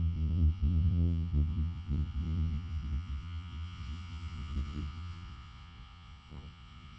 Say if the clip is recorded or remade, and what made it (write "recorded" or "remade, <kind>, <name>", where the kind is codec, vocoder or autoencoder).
remade, vocoder, Vocos